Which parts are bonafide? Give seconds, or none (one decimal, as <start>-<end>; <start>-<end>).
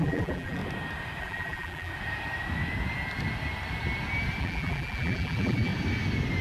0.6-1.2; 1.9-4.4; 5.7-6.4